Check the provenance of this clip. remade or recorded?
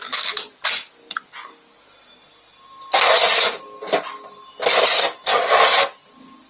recorded